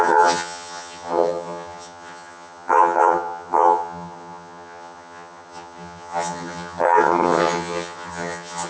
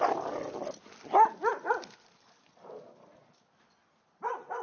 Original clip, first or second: second